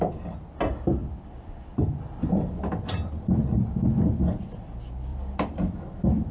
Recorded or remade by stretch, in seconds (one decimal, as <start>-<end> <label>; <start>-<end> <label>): 0.0-1.0 recorded; 1.0-2.6 remade; 2.6-5.1 recorded; 5.1-5.8 remade; 5.8-6.3 recorded